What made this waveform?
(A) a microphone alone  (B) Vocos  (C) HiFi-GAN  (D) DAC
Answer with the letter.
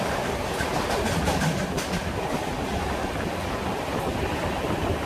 A